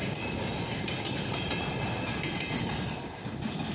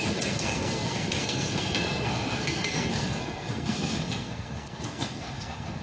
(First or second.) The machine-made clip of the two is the second